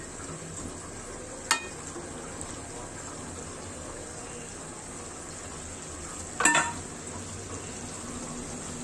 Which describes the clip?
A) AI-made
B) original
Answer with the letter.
B